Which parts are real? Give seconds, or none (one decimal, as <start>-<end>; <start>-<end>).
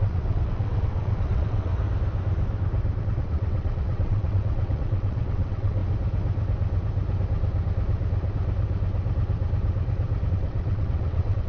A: 1.7-3.0; 5.8-10.3